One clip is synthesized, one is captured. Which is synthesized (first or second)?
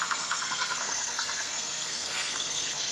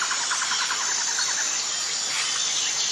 first